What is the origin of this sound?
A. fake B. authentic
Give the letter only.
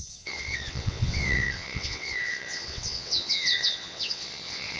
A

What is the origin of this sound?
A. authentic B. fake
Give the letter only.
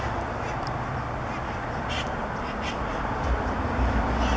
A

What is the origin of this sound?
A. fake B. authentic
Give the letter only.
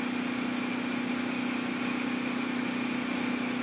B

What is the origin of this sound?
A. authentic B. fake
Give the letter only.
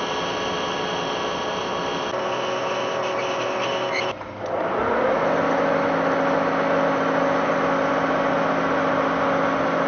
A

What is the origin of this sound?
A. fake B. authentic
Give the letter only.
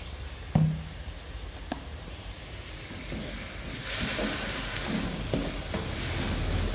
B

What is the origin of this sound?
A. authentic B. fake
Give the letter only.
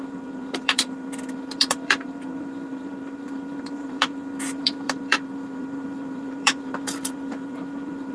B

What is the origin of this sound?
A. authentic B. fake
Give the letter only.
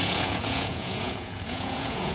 B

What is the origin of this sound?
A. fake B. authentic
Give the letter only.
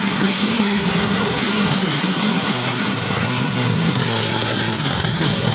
A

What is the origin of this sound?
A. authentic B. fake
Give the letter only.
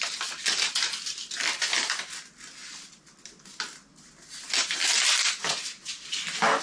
A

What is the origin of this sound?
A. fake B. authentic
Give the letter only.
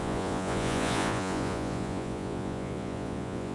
A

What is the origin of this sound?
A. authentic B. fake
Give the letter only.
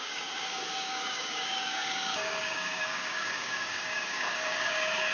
B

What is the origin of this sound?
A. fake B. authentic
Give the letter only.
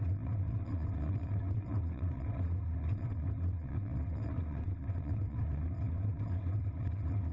A